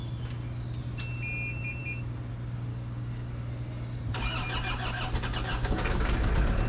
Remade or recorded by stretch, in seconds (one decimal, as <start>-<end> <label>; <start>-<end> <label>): 0.0-2.7 recorded; 2.7-3.3 remade; 3.3-5.5 recorded; 5.5-6.3 remade; 6.3-6.7 recorded